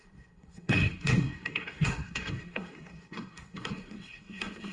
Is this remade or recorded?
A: remade